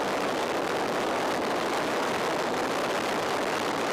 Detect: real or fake real